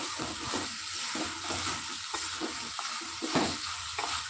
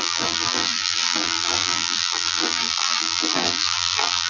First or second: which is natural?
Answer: first